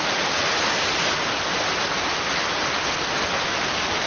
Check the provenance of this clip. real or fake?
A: real